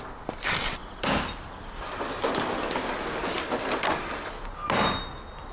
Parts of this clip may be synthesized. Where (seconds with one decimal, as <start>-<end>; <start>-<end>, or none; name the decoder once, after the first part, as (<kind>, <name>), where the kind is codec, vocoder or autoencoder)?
none